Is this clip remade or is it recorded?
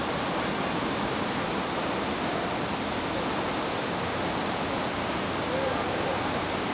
recorded